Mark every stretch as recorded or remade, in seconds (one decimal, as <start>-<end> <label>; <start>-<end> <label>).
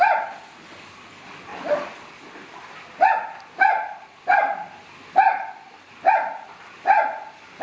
0.0-7.6 recorded